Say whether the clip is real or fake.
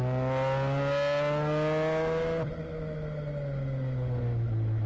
real